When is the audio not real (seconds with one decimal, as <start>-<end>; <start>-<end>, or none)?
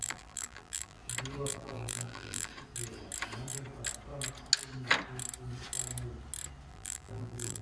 0.0-1.0; 1.5-2.5; 6.7-7.6